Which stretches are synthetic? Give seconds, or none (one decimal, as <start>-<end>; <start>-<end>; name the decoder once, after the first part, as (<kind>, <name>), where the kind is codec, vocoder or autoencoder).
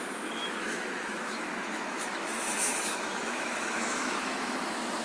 0.0-5.0 (autoencoder, DAC-VAE)